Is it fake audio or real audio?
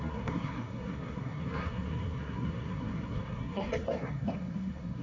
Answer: fake